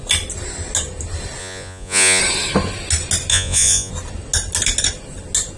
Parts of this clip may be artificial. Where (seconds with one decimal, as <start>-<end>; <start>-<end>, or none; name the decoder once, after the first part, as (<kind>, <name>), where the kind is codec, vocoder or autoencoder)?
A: 1.4-2.2 (vocoder, Vocos); 3.3-3.9